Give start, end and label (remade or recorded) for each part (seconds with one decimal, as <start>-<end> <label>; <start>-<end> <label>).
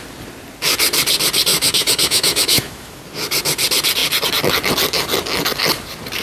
0.0-1.5 recorded; 1.5-3.0 remade; 3.0-6.2 recorded